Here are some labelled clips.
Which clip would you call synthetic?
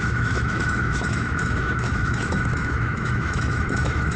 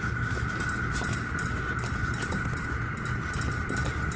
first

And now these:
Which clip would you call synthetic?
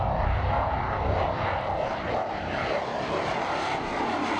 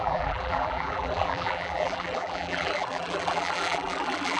second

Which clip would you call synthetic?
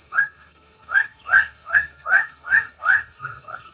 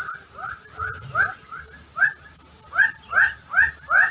first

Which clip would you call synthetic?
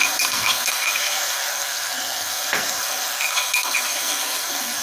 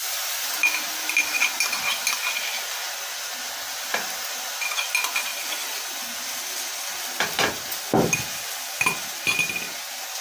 first